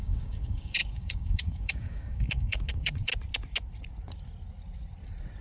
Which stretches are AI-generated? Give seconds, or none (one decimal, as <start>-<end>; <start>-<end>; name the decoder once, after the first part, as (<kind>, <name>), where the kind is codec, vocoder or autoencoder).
0.0-3.1 (codec, DAC)

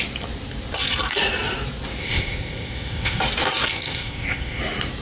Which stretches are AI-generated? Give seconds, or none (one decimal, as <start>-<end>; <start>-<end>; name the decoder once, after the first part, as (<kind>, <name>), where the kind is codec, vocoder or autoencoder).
2.0-3.2 (codec, ZipCodec); 3.7-4.6